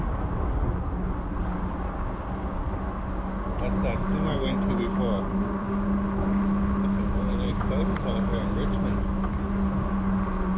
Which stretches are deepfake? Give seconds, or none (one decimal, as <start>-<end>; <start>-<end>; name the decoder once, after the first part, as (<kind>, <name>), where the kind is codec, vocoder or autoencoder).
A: none